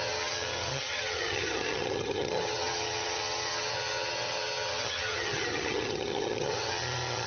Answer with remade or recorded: remade